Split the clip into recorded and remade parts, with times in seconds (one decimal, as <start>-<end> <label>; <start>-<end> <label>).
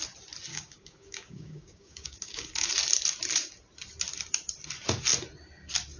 0.0-0.5 recorded; 0.5-2.7 remade; 2.7-6.0 recorded